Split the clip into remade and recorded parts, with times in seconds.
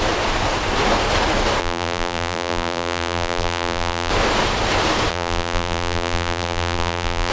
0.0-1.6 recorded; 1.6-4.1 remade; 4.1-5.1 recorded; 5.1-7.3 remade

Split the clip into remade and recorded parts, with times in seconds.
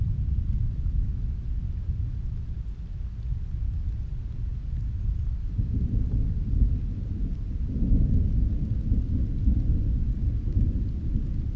0.0-11.6 recorded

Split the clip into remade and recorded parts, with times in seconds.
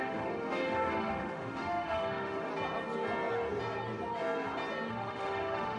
0.0-2.5 remade; 2.5-4.9 recorded; 4.9-5.8 remade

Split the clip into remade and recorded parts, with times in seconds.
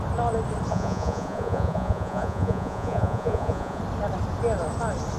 0.0-0.7 recorded; 0.7-3.8 remade; 3.8-5.2 recorded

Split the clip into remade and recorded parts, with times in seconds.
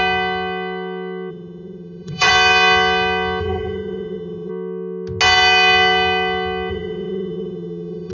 0.0-1.3 recorded; 1.3-2.3 remade; 2.3-3.4 recorded; 3.4-4.5 remade; 4.5-6.7 recorded; 6.7-8.1 remade